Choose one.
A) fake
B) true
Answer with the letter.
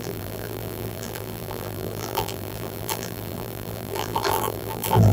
A